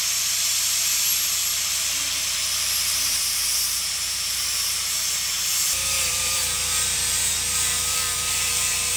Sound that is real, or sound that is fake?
fake